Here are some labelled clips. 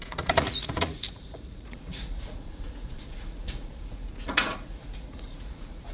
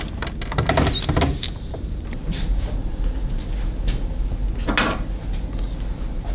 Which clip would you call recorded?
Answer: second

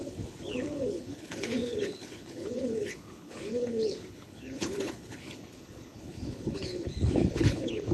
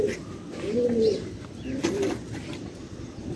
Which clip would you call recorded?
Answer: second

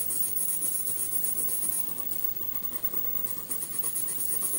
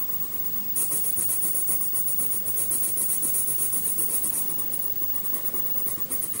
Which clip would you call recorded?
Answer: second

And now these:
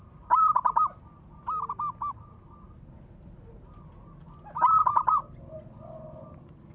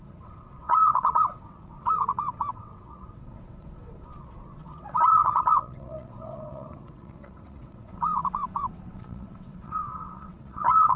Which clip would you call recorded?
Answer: first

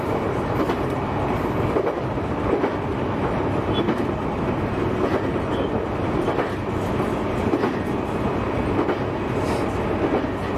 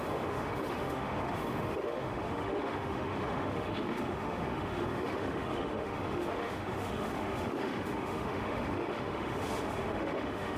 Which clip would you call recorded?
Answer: first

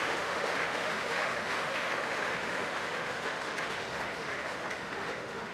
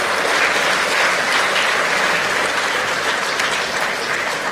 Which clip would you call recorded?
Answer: second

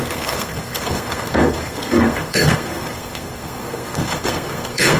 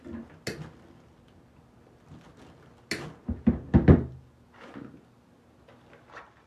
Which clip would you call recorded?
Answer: second